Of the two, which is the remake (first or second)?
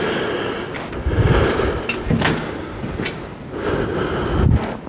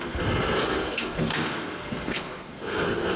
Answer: second